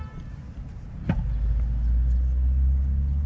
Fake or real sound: real